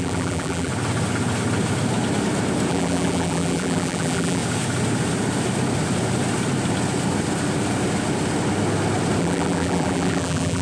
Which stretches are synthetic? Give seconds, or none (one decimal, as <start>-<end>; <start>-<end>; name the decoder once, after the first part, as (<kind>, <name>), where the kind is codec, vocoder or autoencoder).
0.0-0.7 (vocoder, BigVGAN v2); 2.7-4.4; 9.2-10.6